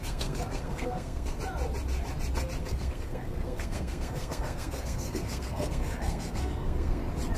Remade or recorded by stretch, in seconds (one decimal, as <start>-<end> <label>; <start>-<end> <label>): 0.0-1.4 remade; 1.4-2.6 recorded; 2.6-7.0 remade; 7.0-7.4 recorded

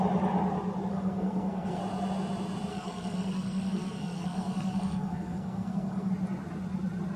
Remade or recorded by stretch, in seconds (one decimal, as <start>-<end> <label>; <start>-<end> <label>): 0.0-0.9 recorded; 0.9-1.8 remade; 1.8-2.7 recorded; 2.7-6.1 remade; 6.1-7.2 recorded

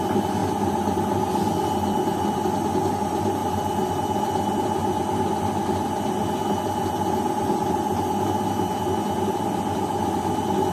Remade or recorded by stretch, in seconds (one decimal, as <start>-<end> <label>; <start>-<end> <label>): 0.0-10.7 recorded